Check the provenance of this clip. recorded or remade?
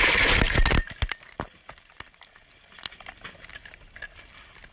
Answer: recorded